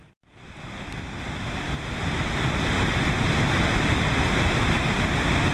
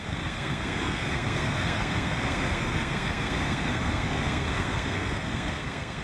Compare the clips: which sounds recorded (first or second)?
first